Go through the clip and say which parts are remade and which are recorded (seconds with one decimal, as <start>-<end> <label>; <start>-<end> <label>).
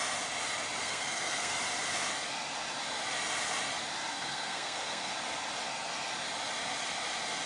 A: 0.0-0.8 recorded; 0.8-1.6 remade; 1.6-4.1 recorded; 4.1-5.1 remade; 5.1-7.5 recorded